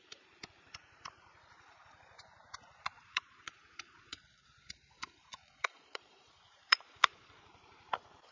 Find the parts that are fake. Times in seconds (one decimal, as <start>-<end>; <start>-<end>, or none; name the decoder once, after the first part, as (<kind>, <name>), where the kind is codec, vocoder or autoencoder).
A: 2.7-7.4 (vocoder, Vocos)